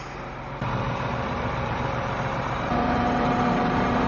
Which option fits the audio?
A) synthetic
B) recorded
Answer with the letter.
A